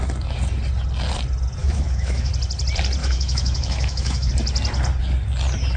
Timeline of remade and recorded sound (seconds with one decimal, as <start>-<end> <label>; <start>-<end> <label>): 0.0-1.6 recorded; 1.6-2.3 remade; 2.3-3.0 recorded; 3.0-4.3 remade; 4.3-5.8 recorded